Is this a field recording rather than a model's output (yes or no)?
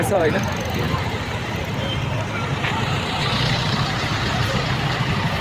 no